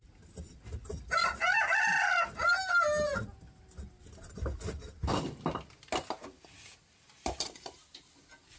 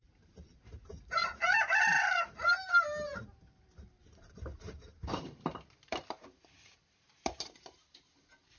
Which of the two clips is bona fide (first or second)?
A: first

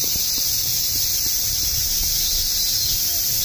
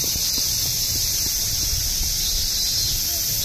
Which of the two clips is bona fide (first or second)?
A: second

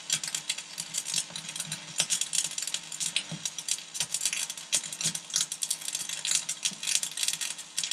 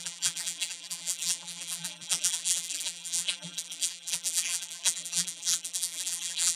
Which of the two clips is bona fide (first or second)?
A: first